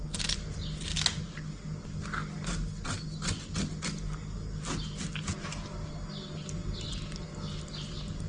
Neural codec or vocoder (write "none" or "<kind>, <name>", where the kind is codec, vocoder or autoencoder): none